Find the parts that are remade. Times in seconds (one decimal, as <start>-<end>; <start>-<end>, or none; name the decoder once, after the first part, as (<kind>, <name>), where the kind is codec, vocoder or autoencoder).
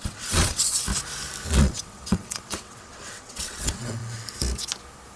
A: 0.0-0.9 (vocoder, WaveNeXt); 1.6-4.0